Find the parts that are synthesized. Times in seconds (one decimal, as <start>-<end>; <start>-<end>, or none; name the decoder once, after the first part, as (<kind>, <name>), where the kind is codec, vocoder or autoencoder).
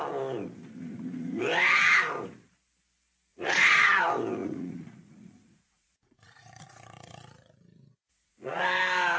3.3-4.0 (vocoder, Vocos); 4.4-8.6